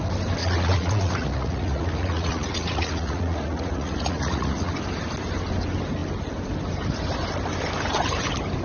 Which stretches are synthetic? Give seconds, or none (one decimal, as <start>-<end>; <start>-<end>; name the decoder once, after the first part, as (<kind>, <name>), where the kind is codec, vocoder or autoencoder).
0.4-4.7 (vocoder, Vocos)